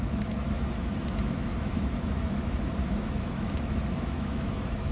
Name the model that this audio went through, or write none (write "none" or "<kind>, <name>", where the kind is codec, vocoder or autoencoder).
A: autoencoder, DAC-VAE